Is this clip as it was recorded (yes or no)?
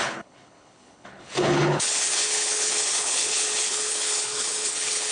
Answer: no